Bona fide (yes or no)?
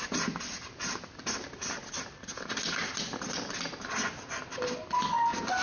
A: yes